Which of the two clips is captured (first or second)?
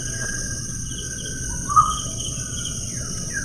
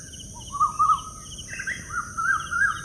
second